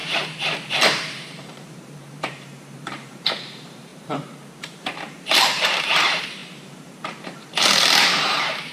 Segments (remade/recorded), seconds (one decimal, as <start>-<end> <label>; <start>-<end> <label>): 0.0-8.7 remade